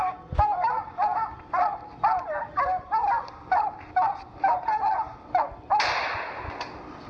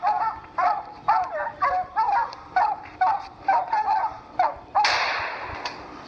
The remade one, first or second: second